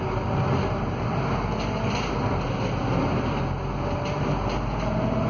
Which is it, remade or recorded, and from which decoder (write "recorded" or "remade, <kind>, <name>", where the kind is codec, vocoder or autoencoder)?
recorded